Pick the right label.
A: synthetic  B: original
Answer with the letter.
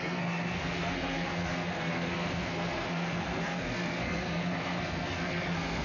A